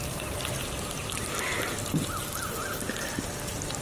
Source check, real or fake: real